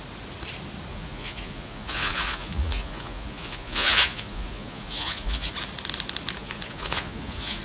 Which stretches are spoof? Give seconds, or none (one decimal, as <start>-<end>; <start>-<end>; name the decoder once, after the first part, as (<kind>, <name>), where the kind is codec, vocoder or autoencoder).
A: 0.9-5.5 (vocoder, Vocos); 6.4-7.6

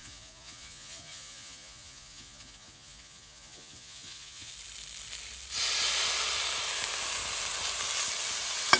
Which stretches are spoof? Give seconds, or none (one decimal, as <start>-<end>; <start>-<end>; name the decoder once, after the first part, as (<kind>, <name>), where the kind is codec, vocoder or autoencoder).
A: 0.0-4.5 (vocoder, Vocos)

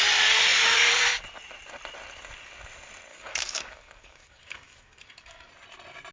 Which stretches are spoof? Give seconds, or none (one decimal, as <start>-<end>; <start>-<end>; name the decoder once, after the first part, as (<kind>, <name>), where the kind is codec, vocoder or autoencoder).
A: 3.1-5.5 (codec, DAC)

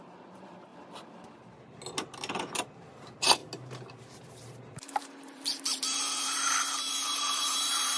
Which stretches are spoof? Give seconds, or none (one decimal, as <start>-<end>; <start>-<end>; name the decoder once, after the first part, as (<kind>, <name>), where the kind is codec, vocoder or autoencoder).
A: 0.0-0.7 (vocoder, BigVGAN v2); 2.5-3.4; 4.4-8.0

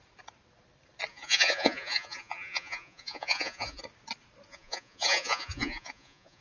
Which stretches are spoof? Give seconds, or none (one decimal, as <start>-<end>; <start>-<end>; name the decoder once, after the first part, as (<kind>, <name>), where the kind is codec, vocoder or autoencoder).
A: 1.1-3.8 (vocoder, Vocos); 4.5-6.4

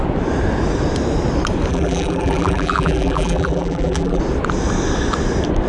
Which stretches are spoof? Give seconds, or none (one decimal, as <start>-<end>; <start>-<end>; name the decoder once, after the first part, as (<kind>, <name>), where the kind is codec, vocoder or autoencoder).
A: 1.7-4.2 (vocoder, BigVGAN v2)